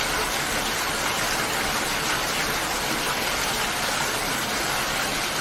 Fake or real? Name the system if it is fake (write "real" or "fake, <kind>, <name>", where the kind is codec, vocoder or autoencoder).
real